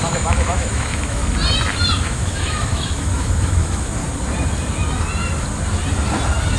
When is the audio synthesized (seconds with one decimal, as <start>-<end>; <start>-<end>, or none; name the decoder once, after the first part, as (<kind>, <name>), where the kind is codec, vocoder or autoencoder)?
0.0-1.2 (autoencoder, DAC-VAE); 2.0-4.0